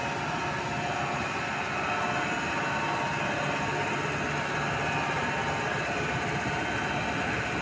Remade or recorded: recorded